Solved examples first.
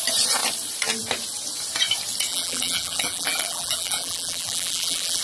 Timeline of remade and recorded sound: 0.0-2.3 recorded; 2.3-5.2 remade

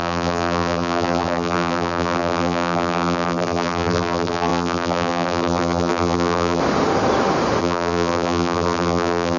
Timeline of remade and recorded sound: 0.0-6.6 remade; 6.6-7.6 recorded; 7.6-9.4 remade